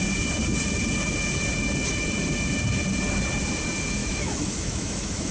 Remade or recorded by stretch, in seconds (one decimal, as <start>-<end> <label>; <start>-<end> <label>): 0.0-4.0 recorded; 4.0-5.3 remade